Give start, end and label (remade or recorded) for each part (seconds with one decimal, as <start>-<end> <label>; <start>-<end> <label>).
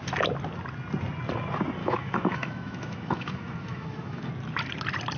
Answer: 0.0-1.8 recorded; 1.8-4.3 remade; 4.3-5.2 recorded